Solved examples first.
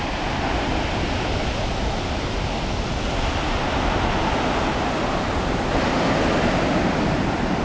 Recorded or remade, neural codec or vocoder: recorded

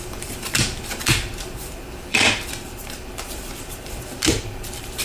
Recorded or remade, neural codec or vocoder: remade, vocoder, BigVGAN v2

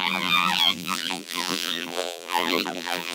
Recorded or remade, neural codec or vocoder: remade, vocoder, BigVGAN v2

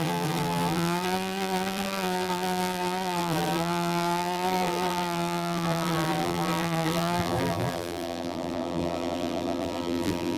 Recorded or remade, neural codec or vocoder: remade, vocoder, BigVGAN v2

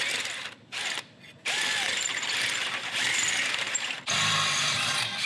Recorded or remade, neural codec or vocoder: recorded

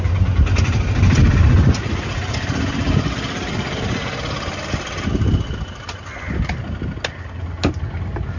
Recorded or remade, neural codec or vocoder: recorded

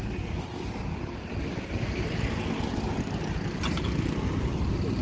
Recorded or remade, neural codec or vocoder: recorded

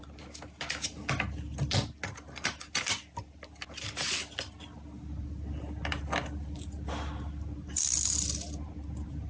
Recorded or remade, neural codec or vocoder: recorded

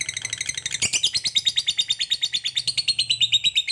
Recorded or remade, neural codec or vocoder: recorded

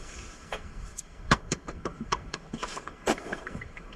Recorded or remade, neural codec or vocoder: remade, codec, SNAC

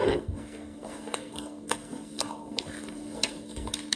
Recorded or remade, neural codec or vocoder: remade, codec, SNAC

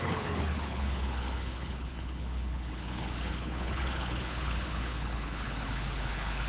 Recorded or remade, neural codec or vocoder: remade, codec, HILCodec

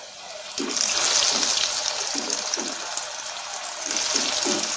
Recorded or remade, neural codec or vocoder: recorded